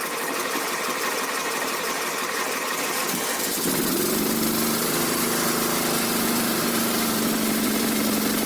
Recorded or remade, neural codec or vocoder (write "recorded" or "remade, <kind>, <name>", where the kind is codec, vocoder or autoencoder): remade, vocoder, BigVGAN v2